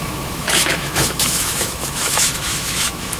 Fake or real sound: fake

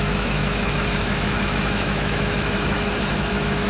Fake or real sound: fake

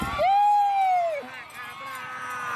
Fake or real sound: real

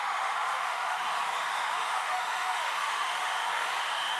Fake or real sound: fake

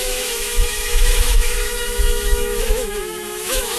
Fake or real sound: fake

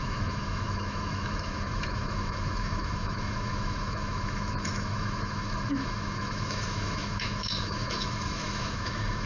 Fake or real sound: fake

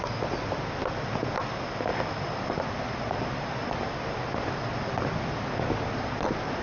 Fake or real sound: real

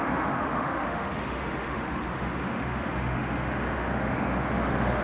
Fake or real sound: fake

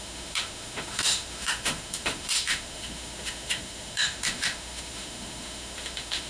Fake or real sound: fake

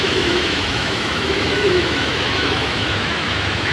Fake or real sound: fake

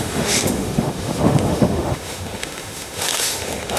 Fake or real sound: fake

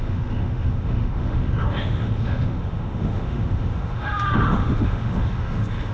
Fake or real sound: fake